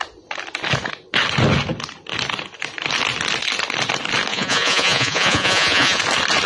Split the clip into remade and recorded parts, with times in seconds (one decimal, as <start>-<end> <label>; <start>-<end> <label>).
0.0-4.3 recorded; 4.3-6.0 remade; 6.0-6.5 recorded